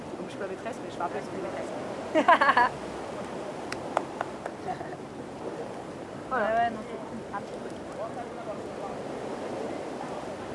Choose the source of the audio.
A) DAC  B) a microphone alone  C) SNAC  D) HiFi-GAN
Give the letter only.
B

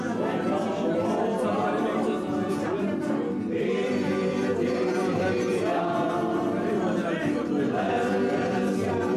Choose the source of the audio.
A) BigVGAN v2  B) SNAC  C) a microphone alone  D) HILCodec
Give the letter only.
C